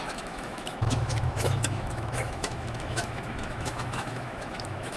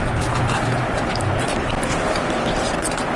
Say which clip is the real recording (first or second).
second